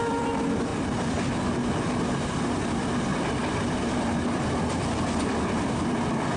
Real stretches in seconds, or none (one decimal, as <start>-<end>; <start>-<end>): 0.7-1.7